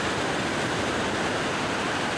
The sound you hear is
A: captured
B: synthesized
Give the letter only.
A